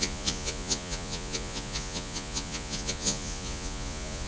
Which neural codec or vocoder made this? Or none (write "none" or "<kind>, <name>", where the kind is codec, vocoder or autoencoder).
vocoder, Vocos